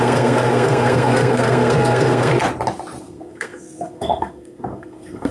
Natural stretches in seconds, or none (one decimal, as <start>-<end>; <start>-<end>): 2.3-3.0